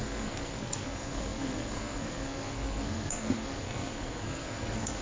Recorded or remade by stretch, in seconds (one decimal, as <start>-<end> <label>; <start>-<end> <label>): 0.0-5.0 remade